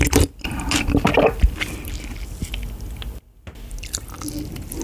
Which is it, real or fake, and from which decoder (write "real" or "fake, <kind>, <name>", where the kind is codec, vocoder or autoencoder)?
real